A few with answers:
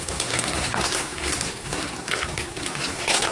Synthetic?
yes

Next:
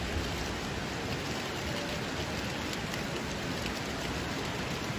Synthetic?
no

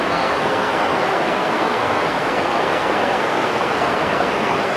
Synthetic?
yes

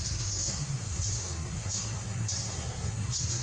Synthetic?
yes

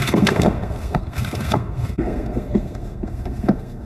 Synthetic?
yes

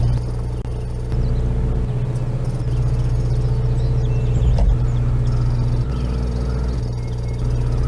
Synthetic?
no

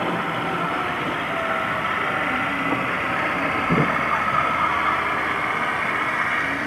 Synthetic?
no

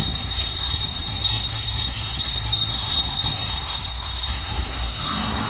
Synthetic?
yes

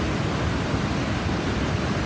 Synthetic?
no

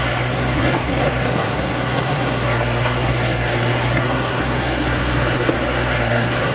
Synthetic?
yes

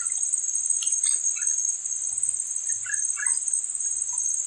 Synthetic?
no